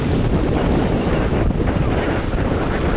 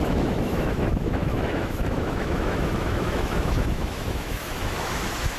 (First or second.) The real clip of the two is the first